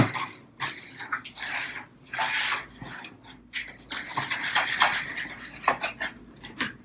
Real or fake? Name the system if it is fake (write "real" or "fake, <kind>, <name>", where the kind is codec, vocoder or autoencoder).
real